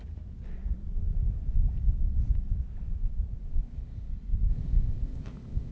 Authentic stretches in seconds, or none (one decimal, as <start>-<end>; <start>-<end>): 0.0-3.5; 4.1-4.5